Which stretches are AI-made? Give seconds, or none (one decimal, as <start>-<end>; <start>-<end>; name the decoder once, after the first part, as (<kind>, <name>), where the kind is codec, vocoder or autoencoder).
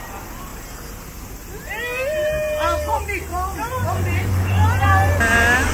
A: 0.5-1.3 (vocoder, BigVGAN v2); 3.3-5.2